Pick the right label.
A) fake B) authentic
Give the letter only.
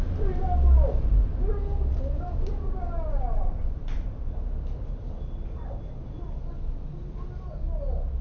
B